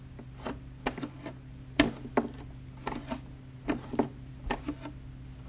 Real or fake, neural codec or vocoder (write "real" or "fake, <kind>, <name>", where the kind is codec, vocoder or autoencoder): real